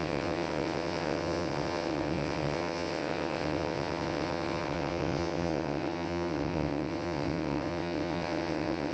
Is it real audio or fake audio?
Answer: fake